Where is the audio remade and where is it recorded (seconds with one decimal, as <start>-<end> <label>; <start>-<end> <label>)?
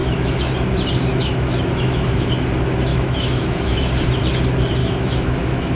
0.0-0.5 remade; 0.5-1.1 recorded; 1.1-2.3 remade; 2.3-2.9 recorded; 2.9-3.9 remade; 3.9-4.8 recorded; 4.8-5.7 remade